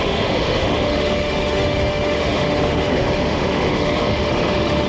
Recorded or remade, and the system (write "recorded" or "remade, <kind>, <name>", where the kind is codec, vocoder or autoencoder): remade, autoencoder, DAC-VAE